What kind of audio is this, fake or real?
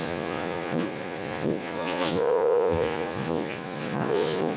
fake